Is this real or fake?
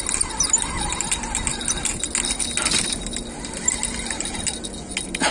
real